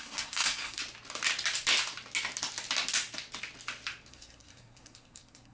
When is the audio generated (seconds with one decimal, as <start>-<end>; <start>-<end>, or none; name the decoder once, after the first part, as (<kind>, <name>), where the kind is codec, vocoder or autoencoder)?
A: 0.0-0.8 (codec, SNAC); 4.1-5.5